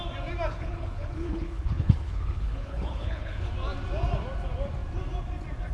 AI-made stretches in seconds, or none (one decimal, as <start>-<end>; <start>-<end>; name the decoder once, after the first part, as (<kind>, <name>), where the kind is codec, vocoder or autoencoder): 0.5-3.5 (codec, HILCodec)